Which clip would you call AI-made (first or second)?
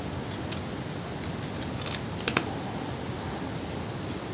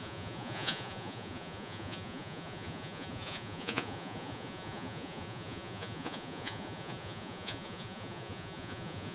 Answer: second